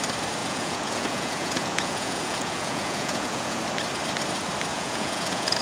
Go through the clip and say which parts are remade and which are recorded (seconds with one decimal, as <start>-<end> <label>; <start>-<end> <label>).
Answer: 0.0-0.4 recorded; 0.4-3.6 remade; 3.6-4.7 recorded; 4.7-5.6 remade